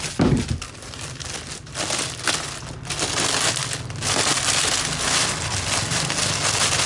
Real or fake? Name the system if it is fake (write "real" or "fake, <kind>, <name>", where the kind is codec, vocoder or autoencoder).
real